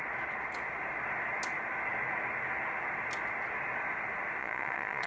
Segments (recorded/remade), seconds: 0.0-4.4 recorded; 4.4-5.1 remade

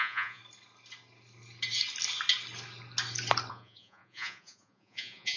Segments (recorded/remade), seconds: 0.0-0.4 remade; 0.4-3.5 recorded; 3.5-5.4 remade